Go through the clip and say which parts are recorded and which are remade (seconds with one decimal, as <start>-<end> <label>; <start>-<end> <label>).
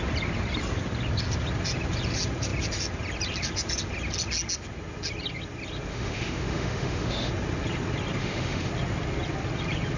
0.0-5.9 recorded; 5.9-7.3 remade; 7.3-8.2 recorded; 8.2-8.7 remade; 8.7-10.0 recorded